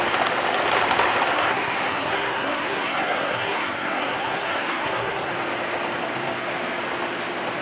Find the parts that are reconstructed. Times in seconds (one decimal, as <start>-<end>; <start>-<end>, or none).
1.4-5.3